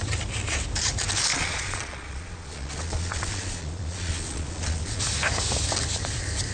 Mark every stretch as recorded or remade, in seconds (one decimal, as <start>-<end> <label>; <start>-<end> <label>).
0.0-1.3 recorded; 1.3-5.0 remade; 5.0-6.5 recorded